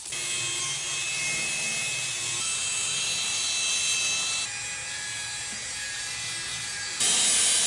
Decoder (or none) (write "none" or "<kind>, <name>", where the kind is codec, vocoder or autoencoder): none